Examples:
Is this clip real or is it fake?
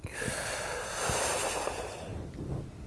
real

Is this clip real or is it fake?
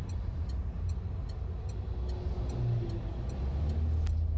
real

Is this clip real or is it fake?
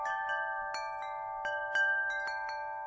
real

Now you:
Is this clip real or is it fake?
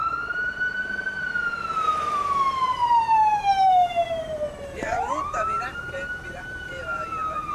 fake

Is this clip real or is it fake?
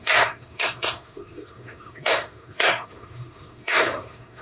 fake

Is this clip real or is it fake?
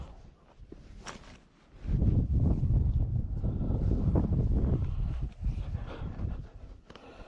real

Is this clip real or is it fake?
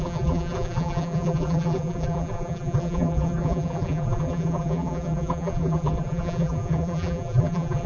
fake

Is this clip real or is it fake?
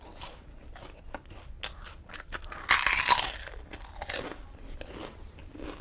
real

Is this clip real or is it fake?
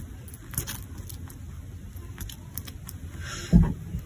real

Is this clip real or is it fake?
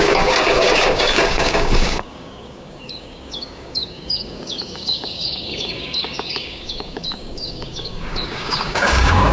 fake